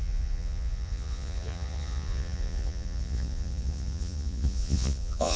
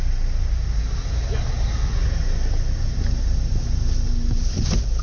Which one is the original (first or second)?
second